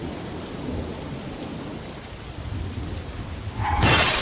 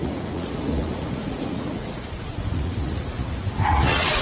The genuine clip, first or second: first